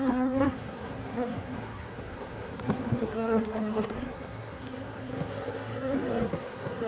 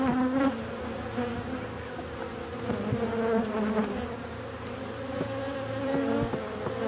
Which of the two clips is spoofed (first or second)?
first